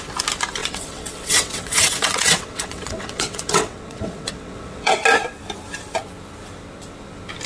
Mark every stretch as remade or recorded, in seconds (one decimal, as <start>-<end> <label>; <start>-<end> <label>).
0.0-0.6 recorded; 0.6-5.0 remade; 5.0-7.5 recorded